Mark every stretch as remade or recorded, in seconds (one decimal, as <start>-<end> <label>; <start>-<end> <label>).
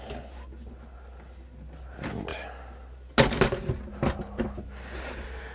0.0-5.5 recorded